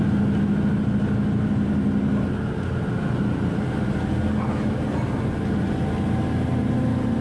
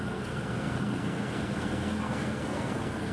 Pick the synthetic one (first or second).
second